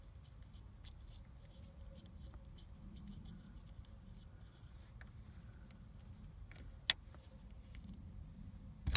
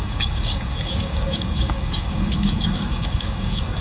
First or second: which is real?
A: first